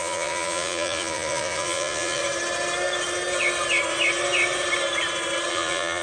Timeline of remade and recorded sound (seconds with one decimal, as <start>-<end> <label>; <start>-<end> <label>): 0.0-2.2 remade; 2.2-5.5 recorded; 5.5-6.0 remade